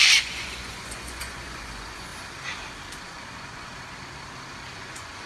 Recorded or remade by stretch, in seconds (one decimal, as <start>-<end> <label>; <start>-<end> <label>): 0.0-2.1 remade; 2.1-3.0 recorded; 3.0-3.7 remade; 3.7-4.7 recorded; 4.7-5.3 remade